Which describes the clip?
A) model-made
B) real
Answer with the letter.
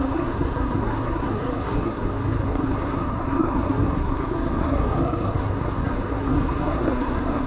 A